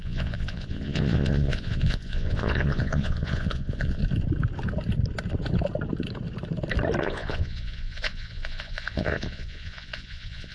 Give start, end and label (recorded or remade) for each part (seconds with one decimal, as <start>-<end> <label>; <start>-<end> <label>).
0.0-4.0 remade; 4.0-7.0 recorded; 7.0-10.5 remade